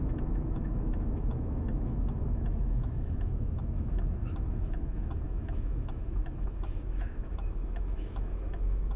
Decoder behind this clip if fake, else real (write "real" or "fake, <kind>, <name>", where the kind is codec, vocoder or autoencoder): fake, autoencoder, DAC-VAE